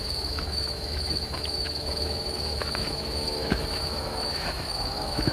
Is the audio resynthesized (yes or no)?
yes